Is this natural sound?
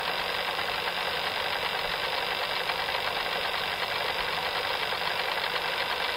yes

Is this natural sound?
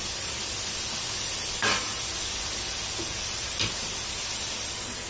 yes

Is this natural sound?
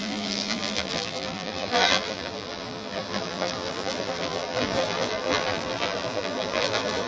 no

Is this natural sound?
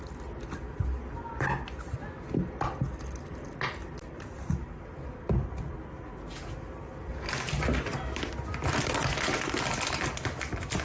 yes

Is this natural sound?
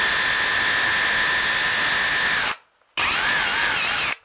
yes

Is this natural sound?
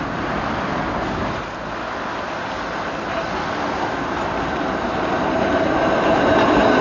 yes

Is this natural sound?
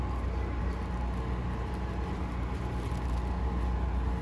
yes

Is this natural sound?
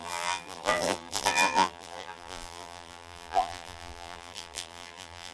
no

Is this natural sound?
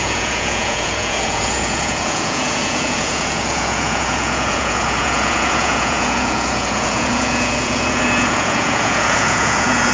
no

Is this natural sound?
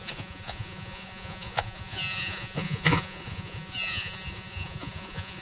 no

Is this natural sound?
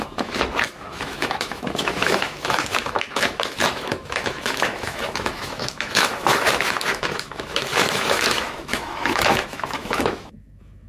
no